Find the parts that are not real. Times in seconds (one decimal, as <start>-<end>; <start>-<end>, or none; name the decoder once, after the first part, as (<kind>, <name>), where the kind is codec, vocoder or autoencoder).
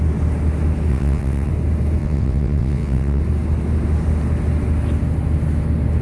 0.9-1.5 (vocoder, WaveNeXt); 2.0-3.2